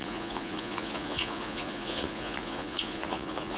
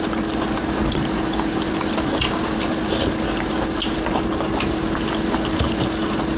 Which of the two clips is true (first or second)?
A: second